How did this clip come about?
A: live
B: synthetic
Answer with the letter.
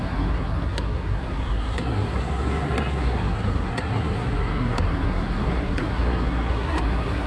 B